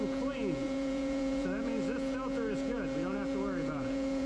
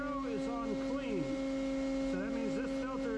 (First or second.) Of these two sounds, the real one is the second